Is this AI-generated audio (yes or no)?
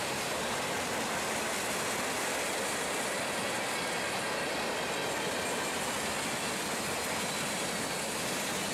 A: no